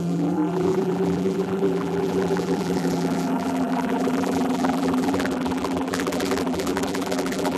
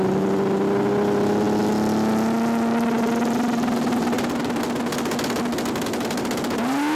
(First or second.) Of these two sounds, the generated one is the first